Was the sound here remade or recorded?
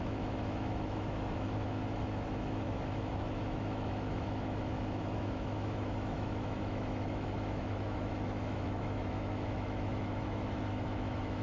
remade